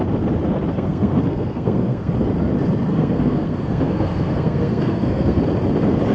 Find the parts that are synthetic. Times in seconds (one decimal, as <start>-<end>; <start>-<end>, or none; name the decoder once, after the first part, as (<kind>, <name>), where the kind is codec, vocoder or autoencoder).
0.7-2.1 (codec, SNAC); 2.9-5.4